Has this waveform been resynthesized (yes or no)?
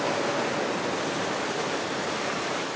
no